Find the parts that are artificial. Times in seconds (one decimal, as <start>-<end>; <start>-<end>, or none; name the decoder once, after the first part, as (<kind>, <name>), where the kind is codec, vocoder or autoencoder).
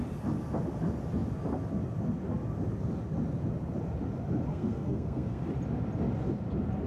4.5-5.5 (codec, SNAC)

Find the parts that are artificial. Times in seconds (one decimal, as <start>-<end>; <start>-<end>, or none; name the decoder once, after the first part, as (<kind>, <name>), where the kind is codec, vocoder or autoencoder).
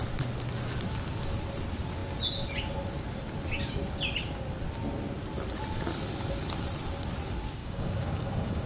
7.6-8.7 (codec, DAC)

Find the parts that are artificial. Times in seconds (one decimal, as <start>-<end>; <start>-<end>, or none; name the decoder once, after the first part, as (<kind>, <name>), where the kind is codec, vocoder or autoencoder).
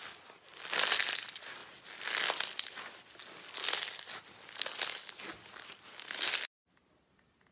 none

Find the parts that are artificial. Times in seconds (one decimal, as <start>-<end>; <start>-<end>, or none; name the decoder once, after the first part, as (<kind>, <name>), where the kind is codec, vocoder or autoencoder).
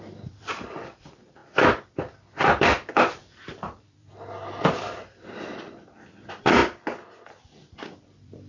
0.0-4.1 (vocoder, BigVGAN v2); 4.7-6.6; 7.4-8.5